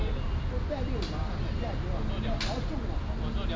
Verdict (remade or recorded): recorded